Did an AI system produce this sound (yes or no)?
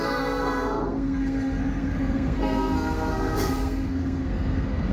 yes